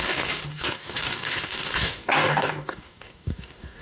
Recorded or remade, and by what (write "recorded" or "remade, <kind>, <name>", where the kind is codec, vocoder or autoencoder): remade, codec, DAC